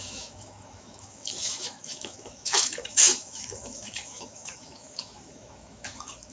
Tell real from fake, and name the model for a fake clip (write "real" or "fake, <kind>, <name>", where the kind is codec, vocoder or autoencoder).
fake, autoencoder, DAC-VAE